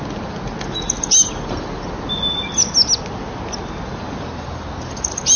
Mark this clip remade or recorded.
recorded